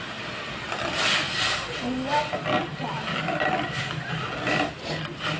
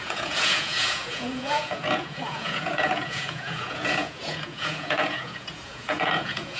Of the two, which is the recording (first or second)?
first